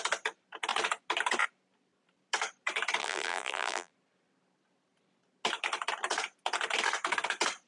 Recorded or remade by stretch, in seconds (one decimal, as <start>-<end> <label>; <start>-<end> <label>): 0.0-3.0 recorded; 3.0-3.9 remade; 3.9-7.7 recorded